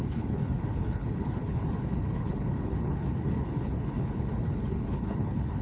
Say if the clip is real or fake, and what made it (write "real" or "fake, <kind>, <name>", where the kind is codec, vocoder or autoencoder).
fake, codec, HILCodec